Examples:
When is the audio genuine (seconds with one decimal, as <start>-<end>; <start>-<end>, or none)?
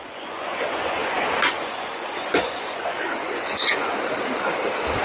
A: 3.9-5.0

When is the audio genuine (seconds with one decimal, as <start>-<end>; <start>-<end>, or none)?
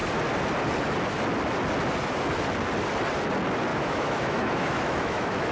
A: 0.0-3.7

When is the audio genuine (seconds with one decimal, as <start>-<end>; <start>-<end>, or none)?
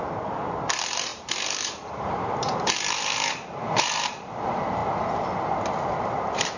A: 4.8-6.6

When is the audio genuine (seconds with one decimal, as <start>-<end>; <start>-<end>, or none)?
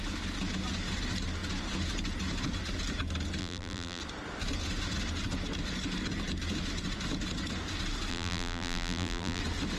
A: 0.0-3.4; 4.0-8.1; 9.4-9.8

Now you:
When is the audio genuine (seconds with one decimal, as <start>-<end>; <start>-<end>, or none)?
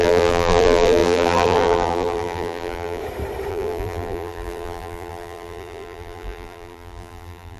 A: 3.0-3.5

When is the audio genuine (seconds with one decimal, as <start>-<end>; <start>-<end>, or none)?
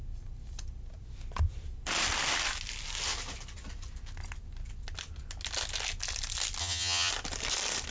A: 0.0-6.6; 7.1-7.9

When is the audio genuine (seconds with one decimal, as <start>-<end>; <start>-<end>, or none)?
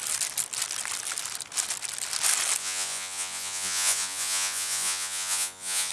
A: 0.0-2.6